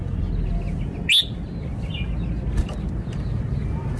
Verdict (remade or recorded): recorded